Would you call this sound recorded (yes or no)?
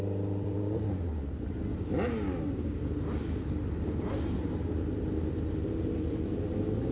yes